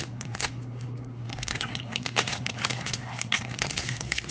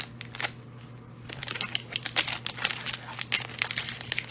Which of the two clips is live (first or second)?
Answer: second